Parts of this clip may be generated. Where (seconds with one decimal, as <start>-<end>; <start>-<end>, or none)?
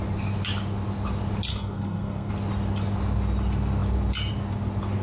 1.5-2.3